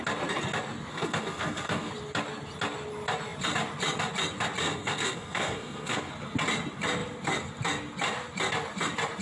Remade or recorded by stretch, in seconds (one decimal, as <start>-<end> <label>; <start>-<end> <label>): 0.0-0.9 recorded; 0.9-1.9 remade; 1.9-4.6 recorded; 4.6-6.1 remade; 6.1-9.2 recorded